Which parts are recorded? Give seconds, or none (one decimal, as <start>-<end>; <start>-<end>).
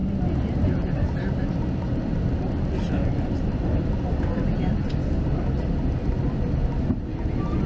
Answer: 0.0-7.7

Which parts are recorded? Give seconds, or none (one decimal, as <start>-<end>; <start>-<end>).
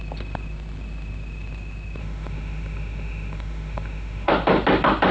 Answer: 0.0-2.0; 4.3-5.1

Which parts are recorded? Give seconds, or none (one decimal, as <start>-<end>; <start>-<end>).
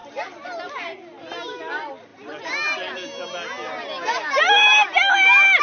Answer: 0.0-5.6